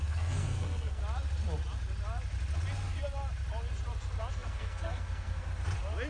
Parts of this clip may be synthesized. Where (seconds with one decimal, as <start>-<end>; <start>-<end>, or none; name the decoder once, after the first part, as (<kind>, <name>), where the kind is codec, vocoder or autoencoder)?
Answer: 0.0-1.0 (codec, SNAC); 4.3-5.5